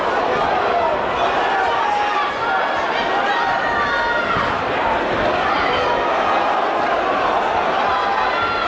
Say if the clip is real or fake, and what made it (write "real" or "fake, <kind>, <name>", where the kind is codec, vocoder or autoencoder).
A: real